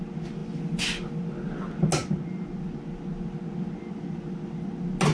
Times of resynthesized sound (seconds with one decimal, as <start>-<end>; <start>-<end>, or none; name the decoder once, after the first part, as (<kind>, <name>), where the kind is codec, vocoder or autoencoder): none